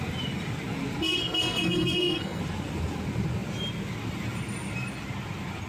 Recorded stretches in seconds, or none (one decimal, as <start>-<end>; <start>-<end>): 0.0-1.2; 2.4-5.7